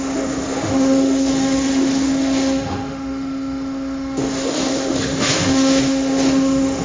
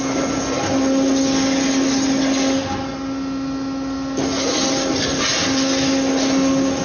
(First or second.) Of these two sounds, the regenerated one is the first